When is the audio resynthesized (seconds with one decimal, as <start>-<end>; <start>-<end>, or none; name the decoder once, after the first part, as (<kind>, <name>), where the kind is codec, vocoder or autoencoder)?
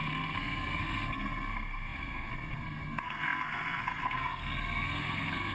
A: 0.0-5.5 (codec, SNAC)